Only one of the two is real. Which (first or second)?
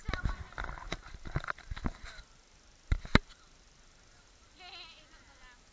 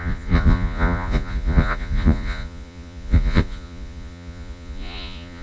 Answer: first